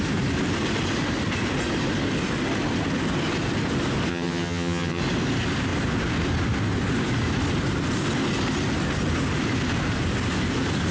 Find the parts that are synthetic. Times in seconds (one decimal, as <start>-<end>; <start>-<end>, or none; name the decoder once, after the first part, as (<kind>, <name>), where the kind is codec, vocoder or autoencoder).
4.1-5.0 (vocoder, HiFi-GAN)